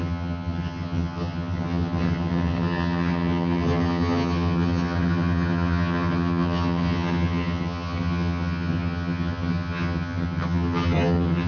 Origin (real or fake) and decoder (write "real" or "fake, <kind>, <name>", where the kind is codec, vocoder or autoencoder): fake, vocoder, HiFi-GAN